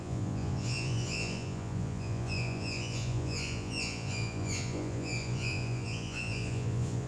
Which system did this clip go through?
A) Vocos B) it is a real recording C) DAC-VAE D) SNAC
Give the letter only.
A